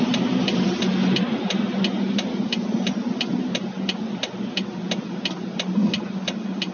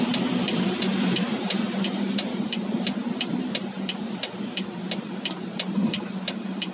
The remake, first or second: second